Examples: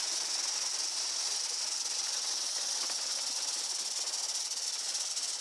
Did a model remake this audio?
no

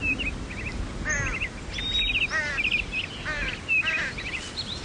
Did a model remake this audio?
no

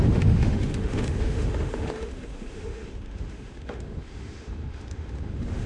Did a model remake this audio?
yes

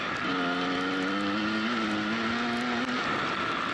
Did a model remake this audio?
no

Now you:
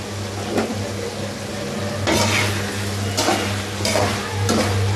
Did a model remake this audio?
no